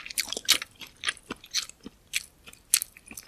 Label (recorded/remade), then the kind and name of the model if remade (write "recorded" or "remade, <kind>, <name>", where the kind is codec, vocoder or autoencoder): recorded